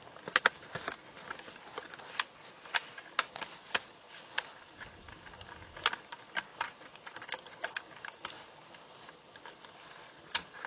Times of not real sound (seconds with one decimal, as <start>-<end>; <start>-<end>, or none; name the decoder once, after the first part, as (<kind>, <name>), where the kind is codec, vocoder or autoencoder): none